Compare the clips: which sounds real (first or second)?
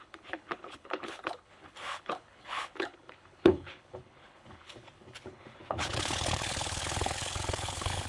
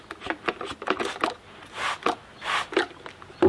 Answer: second